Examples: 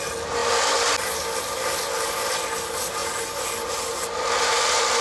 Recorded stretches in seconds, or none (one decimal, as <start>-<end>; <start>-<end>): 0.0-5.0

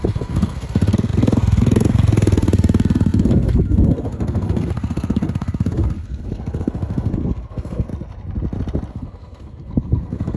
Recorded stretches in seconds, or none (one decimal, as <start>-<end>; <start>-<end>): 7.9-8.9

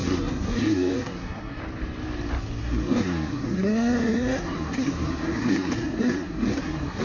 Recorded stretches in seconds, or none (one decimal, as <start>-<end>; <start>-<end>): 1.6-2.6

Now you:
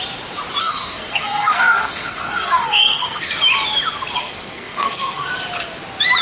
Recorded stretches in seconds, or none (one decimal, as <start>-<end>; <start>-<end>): 0.0-0.6; 3.3-4.2; 5.3-6.2

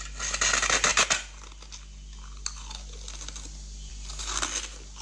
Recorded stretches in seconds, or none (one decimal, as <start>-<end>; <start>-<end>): 0.0-5.0

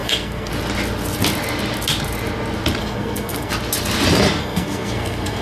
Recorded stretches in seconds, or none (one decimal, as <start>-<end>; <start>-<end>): 0.5-2.8; 3.5-4.4

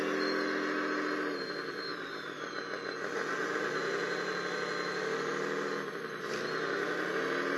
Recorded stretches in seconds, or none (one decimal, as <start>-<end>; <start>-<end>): 0.0-7.6